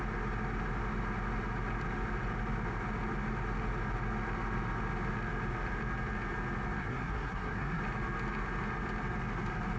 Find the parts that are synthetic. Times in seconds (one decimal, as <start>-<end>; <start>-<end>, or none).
6.8-7.8